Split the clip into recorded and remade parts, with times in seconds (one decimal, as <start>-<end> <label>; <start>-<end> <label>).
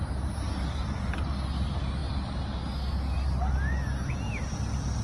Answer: 0.0-5.0 recorded